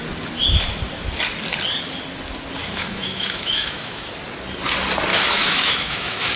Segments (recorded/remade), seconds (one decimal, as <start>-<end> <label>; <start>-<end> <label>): 0.0-2.6 recorded; 2.6-4.1 remade; 4.1-5.1 recorded; 5.1-6.4 remade